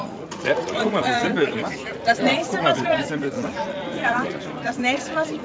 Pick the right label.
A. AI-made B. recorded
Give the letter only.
A